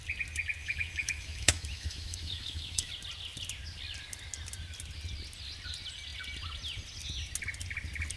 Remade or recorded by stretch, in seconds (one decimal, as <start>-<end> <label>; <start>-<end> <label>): 0.0-0.6 recorded; 0.6-2.9 remade; 2.9-8.2 recorded